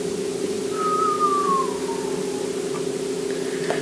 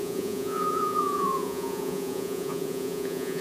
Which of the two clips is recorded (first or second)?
first